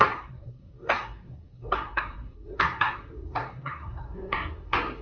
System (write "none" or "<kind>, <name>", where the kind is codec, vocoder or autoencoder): codec, SNAC